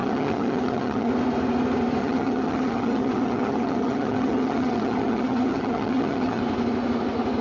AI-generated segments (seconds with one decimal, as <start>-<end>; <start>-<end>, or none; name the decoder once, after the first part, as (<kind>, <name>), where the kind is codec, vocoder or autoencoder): 0.0-1.1 (vocoder, HiFi-GAN); 2.0-6.4